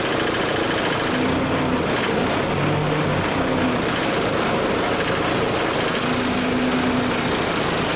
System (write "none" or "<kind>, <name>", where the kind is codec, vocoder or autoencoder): none